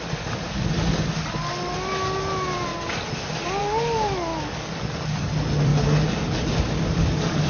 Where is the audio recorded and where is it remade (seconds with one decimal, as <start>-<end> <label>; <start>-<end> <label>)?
0.0-2.7 remade; 2.7-3.6 recorded; 3.6-4.3 remade; 4.3-4.9 recorded; 4.9-5.7 remade; 5.7-6.5 recorded; 6.5-7.5 remade